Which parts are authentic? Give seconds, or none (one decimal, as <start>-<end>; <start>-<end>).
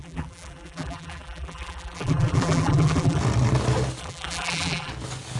3.2-4.0; 4.9-5.4